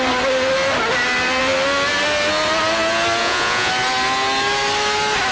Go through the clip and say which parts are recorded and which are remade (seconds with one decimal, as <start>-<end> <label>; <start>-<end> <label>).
0.0-3.2 recorded; 3.2-3.7 remade; 3.7-5.3 recorded